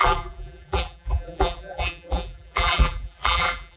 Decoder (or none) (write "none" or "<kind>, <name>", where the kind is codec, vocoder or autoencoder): vocoder, BigVGAN v2